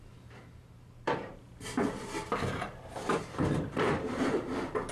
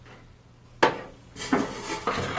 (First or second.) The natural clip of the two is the second